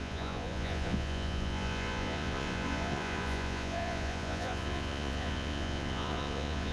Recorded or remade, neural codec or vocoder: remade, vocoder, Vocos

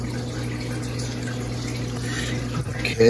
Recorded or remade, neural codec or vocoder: recorded